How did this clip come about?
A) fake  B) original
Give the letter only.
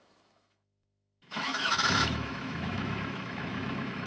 A